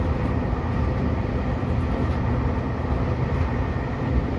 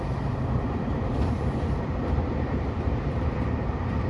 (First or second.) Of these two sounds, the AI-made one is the second